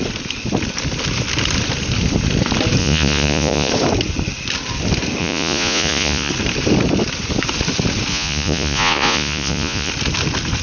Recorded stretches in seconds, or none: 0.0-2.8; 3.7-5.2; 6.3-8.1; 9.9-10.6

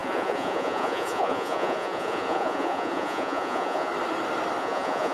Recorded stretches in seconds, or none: 3.9-4.6

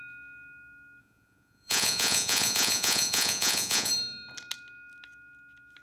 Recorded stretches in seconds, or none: 0.0-1.0; 3.9-5.8

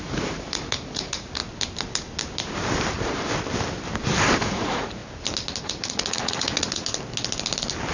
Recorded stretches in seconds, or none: 1.4-4.4; 5.0-5.6; 6.9-7.9

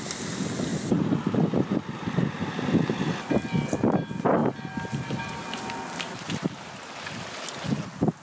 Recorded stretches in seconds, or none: 0.0-8.2

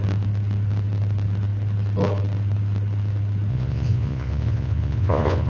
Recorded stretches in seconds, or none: 0.0-3.5

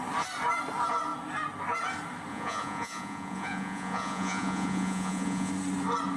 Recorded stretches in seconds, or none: 0.0-2.3; 5.5-6.2

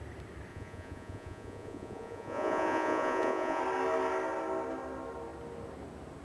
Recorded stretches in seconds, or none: 0.0-0.5; 3.6-6.2